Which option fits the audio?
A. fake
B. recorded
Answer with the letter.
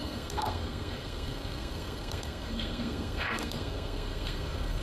A